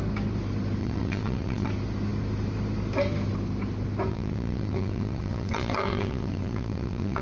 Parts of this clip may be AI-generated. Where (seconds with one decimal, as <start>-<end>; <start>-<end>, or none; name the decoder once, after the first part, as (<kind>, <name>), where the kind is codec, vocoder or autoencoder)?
0.8-1.7 (vocoder, WaveNeXt); 4.1-7.2